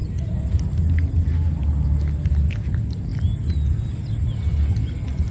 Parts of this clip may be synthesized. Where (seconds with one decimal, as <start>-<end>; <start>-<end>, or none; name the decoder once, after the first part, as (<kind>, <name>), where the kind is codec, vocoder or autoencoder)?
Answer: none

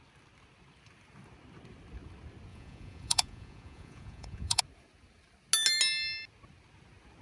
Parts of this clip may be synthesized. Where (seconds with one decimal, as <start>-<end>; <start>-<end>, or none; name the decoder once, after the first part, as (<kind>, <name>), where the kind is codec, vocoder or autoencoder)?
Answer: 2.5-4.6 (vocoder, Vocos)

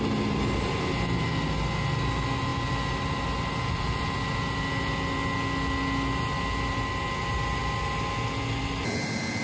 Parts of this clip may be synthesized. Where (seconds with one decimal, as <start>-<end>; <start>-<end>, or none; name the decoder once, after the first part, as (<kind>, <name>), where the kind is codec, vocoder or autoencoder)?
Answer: none

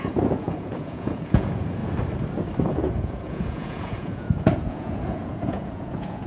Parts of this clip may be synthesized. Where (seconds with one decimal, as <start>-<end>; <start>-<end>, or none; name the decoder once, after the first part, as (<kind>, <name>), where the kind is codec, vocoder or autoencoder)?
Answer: 0.0-1.8 (vocoder, Vocos); 2.7-6.3

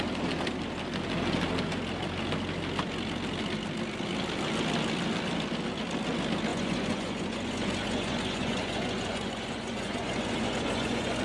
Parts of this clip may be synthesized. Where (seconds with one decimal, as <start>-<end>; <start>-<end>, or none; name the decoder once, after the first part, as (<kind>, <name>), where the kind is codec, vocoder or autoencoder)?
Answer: 6.5-11.2 (vocoder, Vocos)